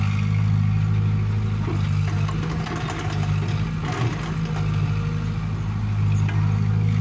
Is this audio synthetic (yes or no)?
no